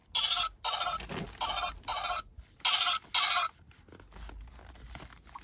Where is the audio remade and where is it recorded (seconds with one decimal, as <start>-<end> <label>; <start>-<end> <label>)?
0.0-5.4 recorded